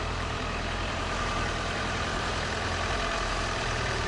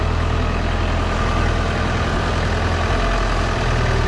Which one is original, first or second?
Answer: second